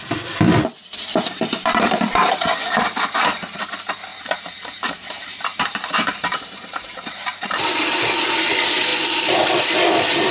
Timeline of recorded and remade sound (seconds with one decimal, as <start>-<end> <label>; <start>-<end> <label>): 0.0-0.8 recorded; 0.8-2.3 remade; 2.3-4.1 recorded; 4.1-7.6 remade; 7.6-10.3 recorded